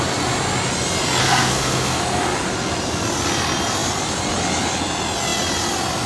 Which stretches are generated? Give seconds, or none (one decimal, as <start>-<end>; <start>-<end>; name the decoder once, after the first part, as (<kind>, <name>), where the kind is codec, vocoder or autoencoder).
1.2-2.0 (codec, SNAC)